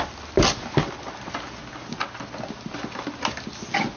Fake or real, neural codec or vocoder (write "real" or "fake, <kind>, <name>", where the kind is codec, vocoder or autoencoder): real